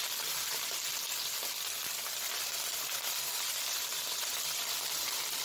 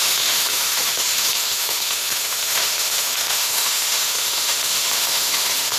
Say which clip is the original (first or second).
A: first